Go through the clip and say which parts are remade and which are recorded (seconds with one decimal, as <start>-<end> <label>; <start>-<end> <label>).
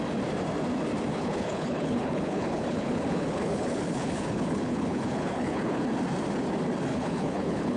0.0-1.1 recorded; 1.1-5.8 remade; 5.8-6.9 recorded; 6.9-7.8 remade